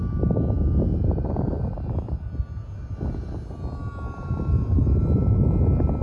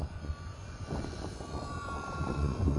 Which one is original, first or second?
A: first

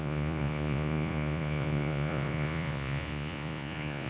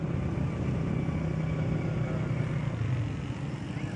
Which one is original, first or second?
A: second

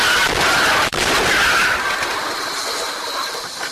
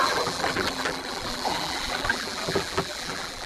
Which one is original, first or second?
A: first